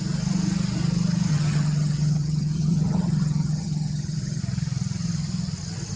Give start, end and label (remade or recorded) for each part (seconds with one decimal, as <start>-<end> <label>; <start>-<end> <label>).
0.0-1.3 recorded; 1.3-4.4 remade; 4.4-6.0 recorded